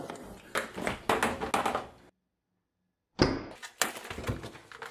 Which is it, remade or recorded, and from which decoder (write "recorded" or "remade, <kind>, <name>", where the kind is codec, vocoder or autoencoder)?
recorded